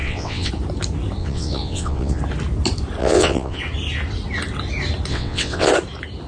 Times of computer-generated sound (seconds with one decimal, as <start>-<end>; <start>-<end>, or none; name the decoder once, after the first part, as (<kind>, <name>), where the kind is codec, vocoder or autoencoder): 0.0-0.5 (vocoder, WaveNeXt); 1.2-2.2; 3.0-3.6; 5.1-5.7